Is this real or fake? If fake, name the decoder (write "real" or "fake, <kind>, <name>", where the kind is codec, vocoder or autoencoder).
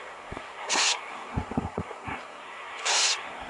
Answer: fake, codec, SNAC